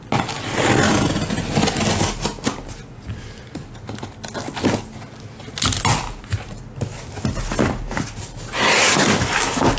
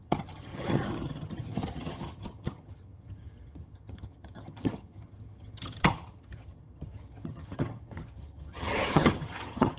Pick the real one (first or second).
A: first